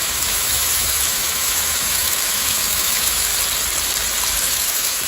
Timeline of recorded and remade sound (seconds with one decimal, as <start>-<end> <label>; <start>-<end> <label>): 0.0-3.3 remade; 3.3-4.4 recorded; 4.4-5.1 remade